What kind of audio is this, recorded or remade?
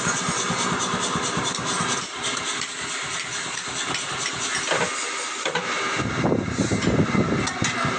recorded